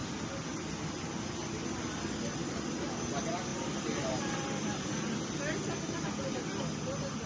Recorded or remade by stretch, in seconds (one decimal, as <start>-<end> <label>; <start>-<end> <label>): 0.0-2.4 recorded; 2.4-3.0 remade; 3.0-3.5 recorded; 3.5-5.4 remade; 5.4-7.3 recorded